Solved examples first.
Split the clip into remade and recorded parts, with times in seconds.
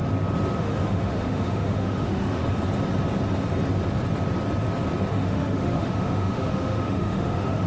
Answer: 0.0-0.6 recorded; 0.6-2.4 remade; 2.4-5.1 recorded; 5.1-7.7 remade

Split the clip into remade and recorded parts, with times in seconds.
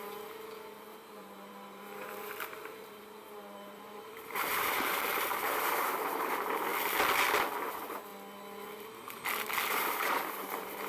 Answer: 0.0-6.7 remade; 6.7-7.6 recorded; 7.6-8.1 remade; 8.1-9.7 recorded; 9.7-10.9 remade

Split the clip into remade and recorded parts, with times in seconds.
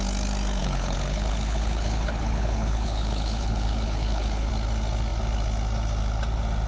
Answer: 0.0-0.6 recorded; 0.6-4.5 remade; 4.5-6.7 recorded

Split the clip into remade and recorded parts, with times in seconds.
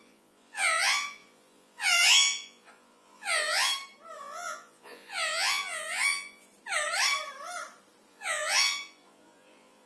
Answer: 0.0-3.7 remade; 3.7-4.2 recorded; 4.2-6.5 remade; 6.5-8.1 recorded; 8.1-9.9 remade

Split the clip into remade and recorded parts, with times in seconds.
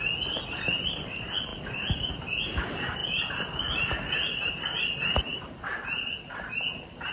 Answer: 0.0-7.1 recorded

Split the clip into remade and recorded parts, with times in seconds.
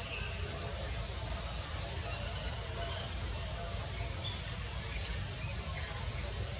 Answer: 0.0-6.6 recorded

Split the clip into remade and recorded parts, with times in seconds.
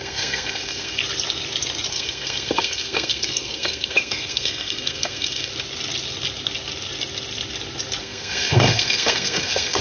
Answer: 0.0-1.0 remade; 1.0-1.9 recorded; 1.9-5.5 remade; 5.5-8.0 recorded; 8.0-9.8 remade